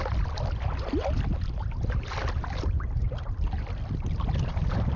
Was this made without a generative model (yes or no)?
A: yes